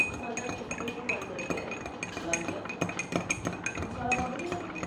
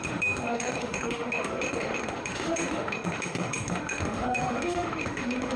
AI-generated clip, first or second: second